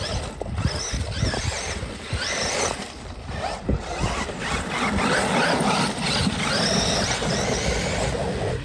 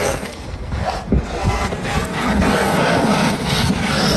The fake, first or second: second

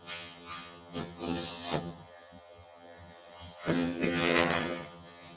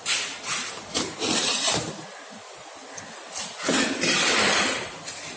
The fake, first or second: first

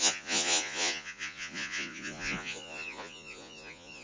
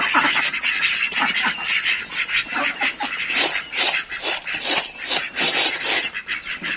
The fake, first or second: first